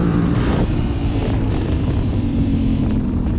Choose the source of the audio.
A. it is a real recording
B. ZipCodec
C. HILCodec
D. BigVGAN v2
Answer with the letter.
D